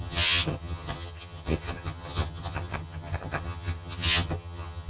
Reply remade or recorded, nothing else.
remade